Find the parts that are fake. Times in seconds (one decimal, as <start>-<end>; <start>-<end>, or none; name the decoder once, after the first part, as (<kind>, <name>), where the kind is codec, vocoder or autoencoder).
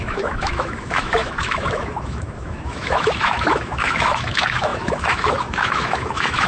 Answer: 0.0-6.5 (autoencoder, DAC-VAE)